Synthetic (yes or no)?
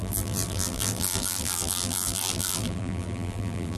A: yes